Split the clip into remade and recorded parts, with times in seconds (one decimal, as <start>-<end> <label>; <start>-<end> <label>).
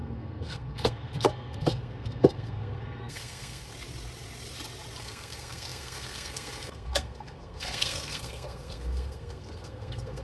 0.0-3.7 remade; 3.7-5.0 recorded; 5.0-10.2 remade